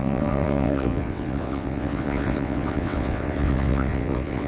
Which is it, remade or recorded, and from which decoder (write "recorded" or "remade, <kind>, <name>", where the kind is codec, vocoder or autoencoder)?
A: remade, vocoder, WaveNeXt